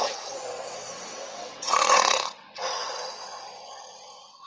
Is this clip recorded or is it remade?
remade